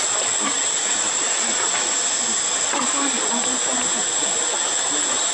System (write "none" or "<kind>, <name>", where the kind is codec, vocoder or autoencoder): none